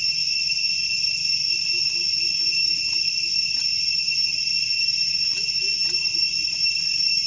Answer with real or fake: real